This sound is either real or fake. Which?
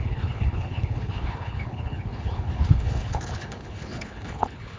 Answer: fake